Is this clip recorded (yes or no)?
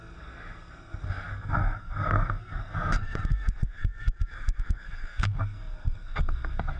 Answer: no